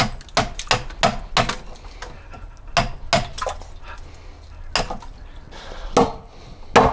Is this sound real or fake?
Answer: real